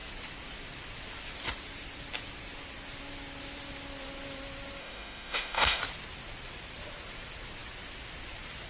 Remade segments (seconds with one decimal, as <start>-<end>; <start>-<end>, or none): 4.8-5.8